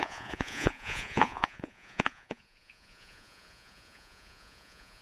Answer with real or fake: fake